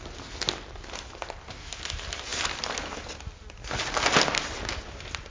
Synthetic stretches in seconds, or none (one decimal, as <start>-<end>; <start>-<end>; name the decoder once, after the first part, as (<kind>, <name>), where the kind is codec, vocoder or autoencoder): none